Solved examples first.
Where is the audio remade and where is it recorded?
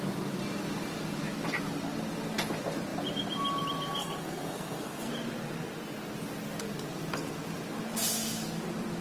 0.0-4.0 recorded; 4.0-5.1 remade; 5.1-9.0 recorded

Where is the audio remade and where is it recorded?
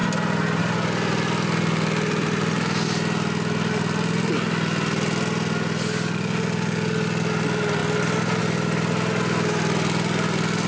0.0-10.7 recorded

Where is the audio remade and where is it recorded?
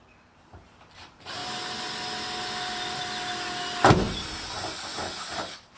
0.0-1.4 remade; 1.4-2.5 recorded; 2.5-3.0 remade; 3.0-4.1 recorded; 4.1-4.9 remade; 4.9-5.8 recorded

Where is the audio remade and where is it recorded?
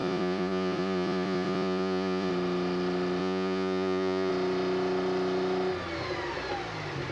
0.0-2.3 remade; 2.3-3.2 recorded; 3.2-4.3 remade; 4.3-7.1 recorded